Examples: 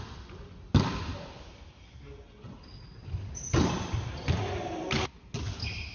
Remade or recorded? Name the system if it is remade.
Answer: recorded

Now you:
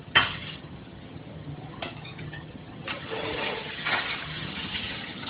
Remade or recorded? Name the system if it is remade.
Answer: remade, vocoder, HiFi-GAN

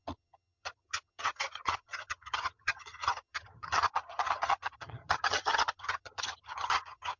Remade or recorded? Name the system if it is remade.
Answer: remade, vocoder, HiFi-GAN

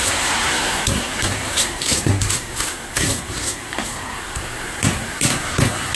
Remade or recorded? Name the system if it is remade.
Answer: remade, codec, SNAC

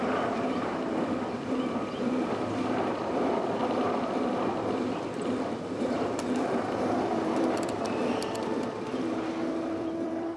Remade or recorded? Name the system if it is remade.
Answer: remade, vocoder, BigVGAN v2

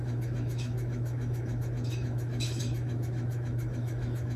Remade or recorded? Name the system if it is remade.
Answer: remade, autoencoder, DAC-VAE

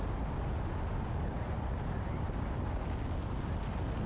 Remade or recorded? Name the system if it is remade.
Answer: recorded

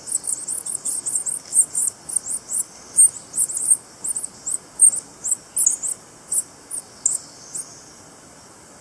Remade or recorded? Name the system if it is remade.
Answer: recorded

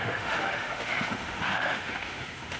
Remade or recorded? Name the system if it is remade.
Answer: remade, autoencoder, DAC-VAE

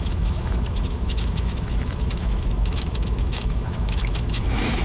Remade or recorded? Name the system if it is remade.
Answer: remade, autoencoder, DAC-VAE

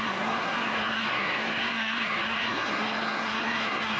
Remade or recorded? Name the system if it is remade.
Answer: remade, codec, SNAC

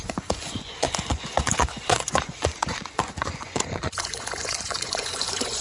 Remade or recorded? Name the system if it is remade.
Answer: remade, vocoder, Vocos